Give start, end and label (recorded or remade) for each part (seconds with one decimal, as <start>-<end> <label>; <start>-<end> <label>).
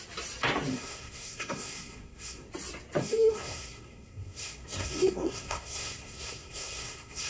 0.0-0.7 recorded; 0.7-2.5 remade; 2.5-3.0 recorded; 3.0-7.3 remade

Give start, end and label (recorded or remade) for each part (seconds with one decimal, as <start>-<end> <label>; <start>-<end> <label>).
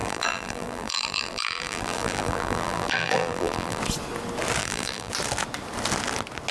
0.0-3.8 remade; 3.8-4.6 recorded; 4.6-5.1 remade; 5.1-6.5 recorded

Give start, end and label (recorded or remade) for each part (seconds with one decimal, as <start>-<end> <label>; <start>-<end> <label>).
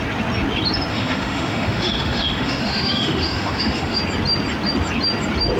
0.0-0.9 recorded; 0.9-4.0 remade; 4.0-5.6 recorded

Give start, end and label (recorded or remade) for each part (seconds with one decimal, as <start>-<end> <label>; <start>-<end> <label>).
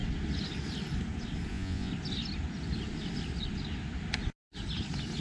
0.0-1.5 recorded; 1.5-1.9 remade; 1.9-5.2 recorded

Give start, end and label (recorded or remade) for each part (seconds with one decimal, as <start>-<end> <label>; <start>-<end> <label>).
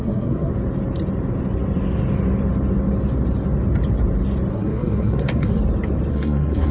0.0-0.5 remade; 0.5-4.5 recorded; 4.5-5.6 remade; 5.6-6.1 recorded; 6.1-6.7 remade